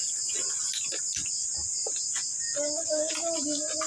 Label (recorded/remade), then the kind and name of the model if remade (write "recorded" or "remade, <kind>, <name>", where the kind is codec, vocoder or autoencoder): recorded